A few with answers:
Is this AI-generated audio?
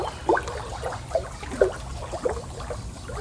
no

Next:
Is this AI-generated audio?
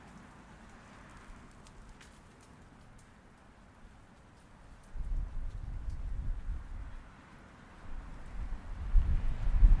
no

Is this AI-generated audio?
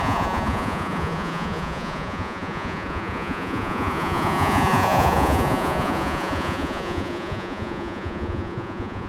yes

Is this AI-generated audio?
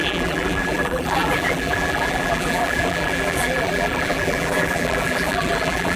yes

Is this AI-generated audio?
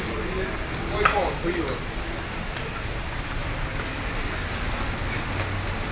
no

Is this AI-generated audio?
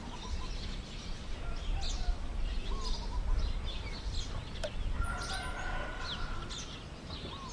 no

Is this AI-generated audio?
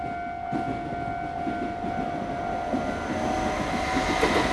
no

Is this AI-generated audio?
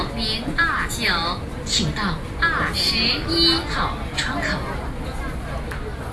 no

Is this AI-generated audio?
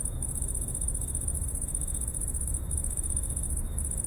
yes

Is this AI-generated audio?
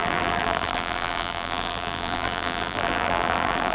yes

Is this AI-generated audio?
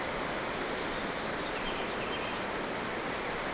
no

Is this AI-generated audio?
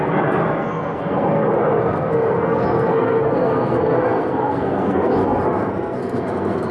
yes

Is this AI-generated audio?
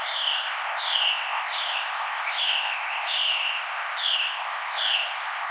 yes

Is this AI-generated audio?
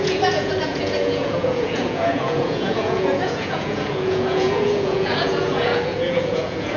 yes